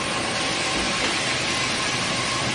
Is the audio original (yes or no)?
yes